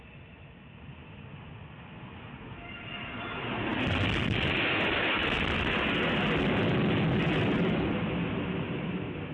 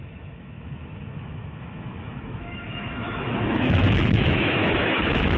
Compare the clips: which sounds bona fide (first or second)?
first